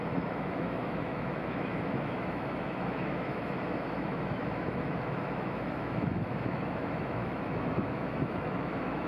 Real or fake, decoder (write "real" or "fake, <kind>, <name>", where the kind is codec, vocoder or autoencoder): fake, autoencoder, DAC-VAE